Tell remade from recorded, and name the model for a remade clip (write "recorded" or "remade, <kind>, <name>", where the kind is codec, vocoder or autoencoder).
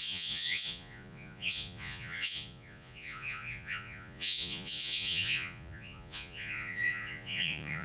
remade, vocoder, Vocos